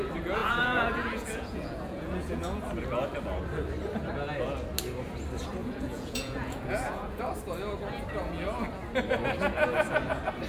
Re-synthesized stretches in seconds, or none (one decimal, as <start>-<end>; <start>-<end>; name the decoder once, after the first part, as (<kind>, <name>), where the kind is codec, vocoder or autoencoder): 0.4-2.6 (vocoder, Vocos); 5.6-7.2